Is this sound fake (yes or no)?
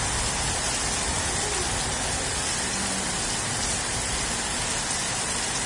no